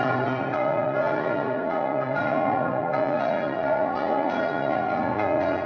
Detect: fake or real fake